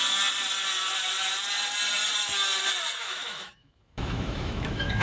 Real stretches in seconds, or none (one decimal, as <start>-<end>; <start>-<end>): 0.0-3.0

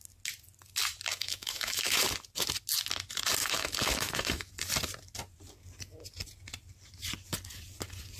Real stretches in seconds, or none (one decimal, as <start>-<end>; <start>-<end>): 0.0-1.1; 2.0-3.4; 4.5-8.2